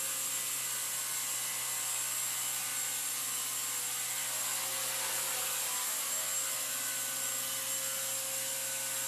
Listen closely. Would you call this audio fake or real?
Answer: real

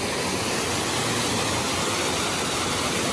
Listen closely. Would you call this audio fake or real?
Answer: real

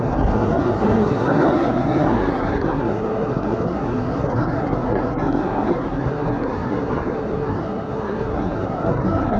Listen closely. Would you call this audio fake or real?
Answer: fake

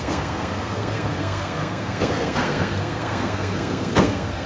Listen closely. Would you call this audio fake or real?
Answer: fake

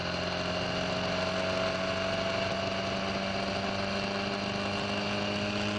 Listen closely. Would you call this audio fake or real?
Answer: real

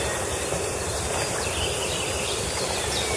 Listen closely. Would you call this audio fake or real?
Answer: real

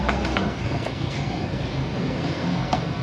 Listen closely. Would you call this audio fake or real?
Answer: fake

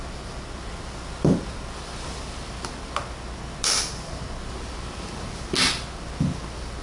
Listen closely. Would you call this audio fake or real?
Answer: real